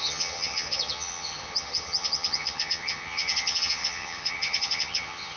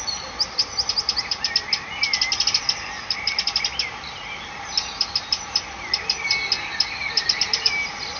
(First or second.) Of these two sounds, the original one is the second